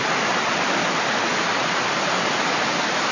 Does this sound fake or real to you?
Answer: real